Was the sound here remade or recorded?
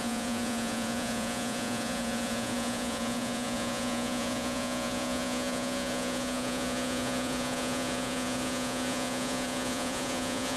remade